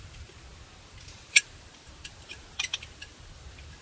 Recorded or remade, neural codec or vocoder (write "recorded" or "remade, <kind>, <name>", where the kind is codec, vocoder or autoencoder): recorded